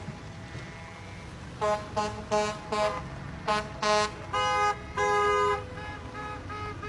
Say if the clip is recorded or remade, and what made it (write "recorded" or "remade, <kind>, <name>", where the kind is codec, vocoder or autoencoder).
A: recorded